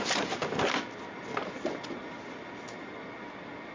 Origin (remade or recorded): recorded